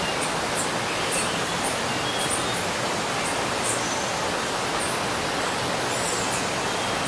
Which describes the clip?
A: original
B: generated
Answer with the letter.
A